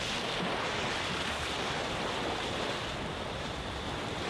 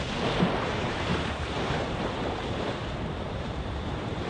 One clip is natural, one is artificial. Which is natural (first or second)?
first